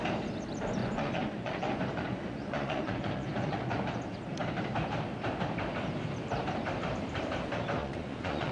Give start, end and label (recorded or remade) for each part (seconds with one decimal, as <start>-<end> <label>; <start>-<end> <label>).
0.0-0.8 recorded; 0.8-4.0 remade; 4.0-7.8 recorded; 7.8-8.5 remade